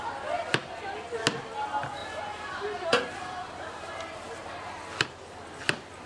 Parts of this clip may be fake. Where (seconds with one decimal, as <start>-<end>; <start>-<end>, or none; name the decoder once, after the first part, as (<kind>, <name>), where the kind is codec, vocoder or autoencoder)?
2.0-3.9 (vocoder, BigVGAN v2)